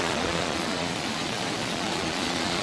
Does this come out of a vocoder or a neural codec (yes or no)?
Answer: yes